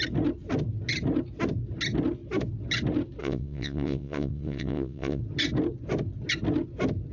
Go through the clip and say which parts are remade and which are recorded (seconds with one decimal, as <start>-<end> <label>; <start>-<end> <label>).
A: 0.0-3.2 recorded; 3.2-5.2 remade; 5.2-7.1 recorded